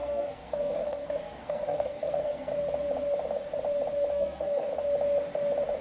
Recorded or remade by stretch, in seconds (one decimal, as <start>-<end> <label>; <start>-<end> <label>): 0.0-2.5 remade; 2.5-4.1 recorded; 4.1-4.7 remade; 4.7-5.8 recorded